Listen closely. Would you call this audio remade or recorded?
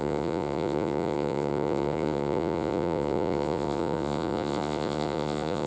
remade